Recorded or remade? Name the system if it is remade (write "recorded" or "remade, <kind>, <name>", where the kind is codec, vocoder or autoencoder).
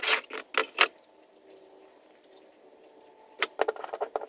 recorded